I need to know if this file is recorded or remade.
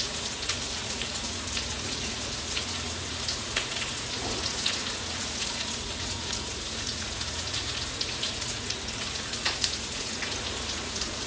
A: remade